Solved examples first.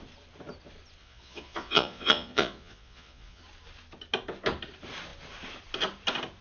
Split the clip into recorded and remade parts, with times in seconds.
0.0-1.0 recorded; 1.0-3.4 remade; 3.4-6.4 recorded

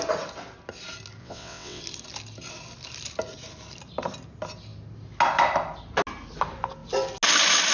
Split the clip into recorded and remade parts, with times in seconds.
0.0-1.2 recorded; 1.2-1.8 remade; 1.8-7.7 recorded

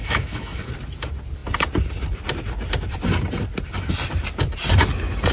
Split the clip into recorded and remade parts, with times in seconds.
0.0-0.7 remade; 0.7-5.3 recorded